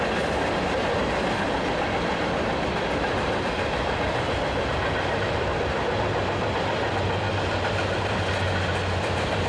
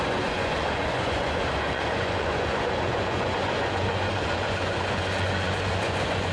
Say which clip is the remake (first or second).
second